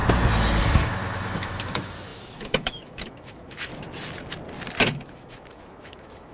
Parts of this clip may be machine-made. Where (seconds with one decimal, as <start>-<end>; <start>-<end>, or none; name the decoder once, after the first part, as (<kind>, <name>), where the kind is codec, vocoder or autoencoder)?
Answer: 0.6-3.7 (autoencoder, DAC-VAE); 4.8-6.3